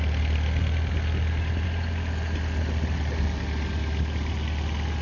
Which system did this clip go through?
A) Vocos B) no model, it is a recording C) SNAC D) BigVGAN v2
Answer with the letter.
B